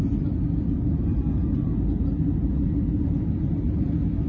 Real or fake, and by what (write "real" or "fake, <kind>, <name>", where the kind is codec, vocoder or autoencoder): real